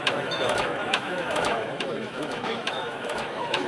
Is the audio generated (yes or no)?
yes